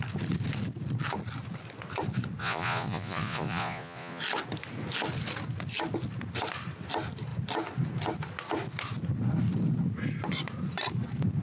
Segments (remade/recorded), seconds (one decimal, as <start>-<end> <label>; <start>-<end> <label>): 0.0-2.4 recorded; 2.4-4.2 remade; 4.2-11.4 recorded